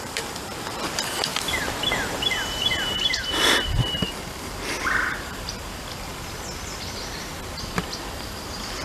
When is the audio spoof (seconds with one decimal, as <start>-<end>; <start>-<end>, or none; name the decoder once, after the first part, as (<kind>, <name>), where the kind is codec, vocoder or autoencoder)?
0.0-1.3 (vocoder, BigVGAN v2); 3.3-6.1; 7.5-8.8